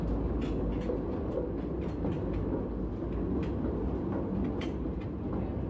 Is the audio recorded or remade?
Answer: recorded